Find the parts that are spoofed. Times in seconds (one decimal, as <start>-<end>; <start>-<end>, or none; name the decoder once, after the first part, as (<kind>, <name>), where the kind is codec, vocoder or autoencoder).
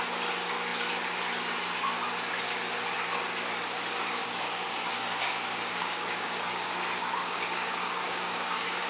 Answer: 4.2-8.9 (codec, DAC)